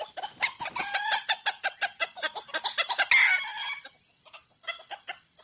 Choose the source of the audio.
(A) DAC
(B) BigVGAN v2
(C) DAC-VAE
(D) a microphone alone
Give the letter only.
D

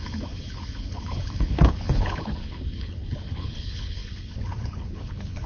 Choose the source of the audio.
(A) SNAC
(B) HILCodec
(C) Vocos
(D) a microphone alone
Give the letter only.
B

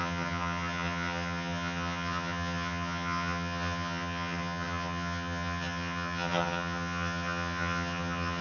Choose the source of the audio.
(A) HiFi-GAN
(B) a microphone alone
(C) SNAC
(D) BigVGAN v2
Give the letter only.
A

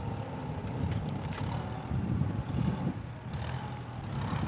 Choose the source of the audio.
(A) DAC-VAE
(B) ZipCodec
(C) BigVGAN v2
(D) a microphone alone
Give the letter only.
D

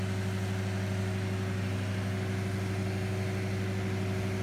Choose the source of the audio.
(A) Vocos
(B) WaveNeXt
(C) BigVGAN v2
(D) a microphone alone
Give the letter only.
D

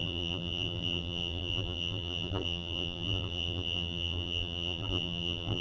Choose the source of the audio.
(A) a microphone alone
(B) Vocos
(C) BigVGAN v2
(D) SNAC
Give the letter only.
C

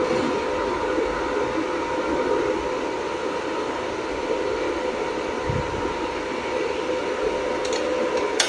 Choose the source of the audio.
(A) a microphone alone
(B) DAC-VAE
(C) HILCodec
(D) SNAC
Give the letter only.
A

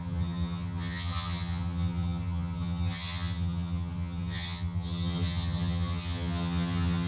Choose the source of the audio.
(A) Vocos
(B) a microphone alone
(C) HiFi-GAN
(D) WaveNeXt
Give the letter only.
C